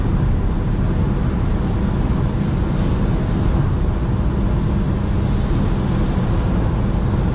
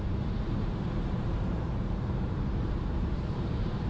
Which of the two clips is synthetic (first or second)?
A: second